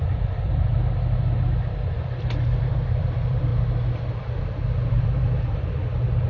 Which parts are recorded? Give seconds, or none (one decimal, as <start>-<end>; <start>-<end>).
0.7-1.7; 3.5-4.4